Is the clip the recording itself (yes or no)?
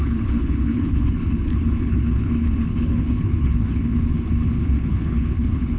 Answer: no